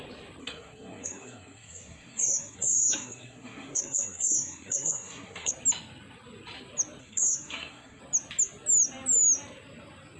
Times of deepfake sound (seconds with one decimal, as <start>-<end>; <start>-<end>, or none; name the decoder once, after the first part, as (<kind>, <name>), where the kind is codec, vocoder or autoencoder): 0.4-5.5 (codec, SNAC); 7.0-8.0